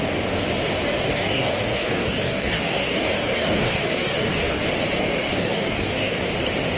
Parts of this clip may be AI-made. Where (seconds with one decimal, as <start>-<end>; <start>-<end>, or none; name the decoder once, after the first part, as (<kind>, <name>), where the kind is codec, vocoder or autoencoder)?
1.1-4.6 (codec, DAC); 5.0-6.2